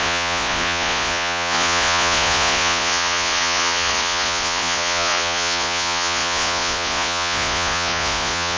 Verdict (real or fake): fake